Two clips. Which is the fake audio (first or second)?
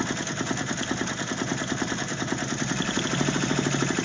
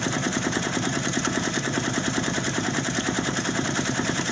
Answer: second